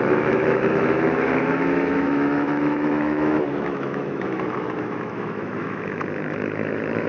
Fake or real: fake